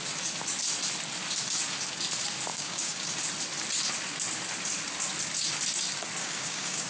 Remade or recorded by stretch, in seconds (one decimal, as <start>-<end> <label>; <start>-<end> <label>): 0.0-2.5 recorded; 2.5-3.1 remade; 3.1-6.2 recorded; 6.2-6.9 remade